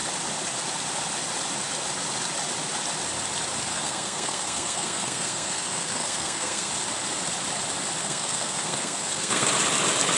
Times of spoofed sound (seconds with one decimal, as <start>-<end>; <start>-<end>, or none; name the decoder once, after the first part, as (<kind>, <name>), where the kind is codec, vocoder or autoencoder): 3.7-6.7 (codec, SNAC); 8.0-9.5